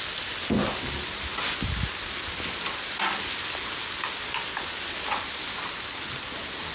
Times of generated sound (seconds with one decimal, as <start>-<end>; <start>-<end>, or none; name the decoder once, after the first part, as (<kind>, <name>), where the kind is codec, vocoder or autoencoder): none